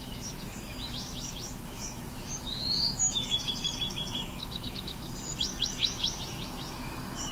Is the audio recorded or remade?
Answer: remade